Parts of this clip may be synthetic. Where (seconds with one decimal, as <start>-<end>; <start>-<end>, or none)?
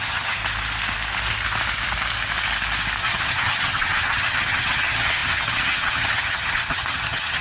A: 0.0-0.4; 3.0-7.4